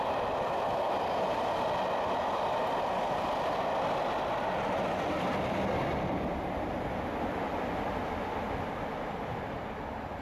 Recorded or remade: recorded